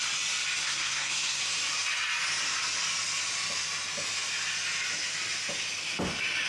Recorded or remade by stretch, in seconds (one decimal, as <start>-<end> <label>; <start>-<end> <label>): 0.0-0.6 recorded; 0.6-1.4 remade; 1.4-6.5 recorded